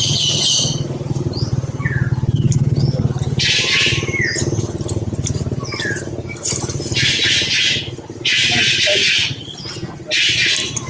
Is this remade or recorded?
recorded